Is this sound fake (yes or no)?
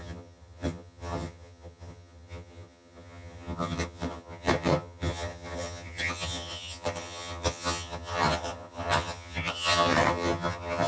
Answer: yes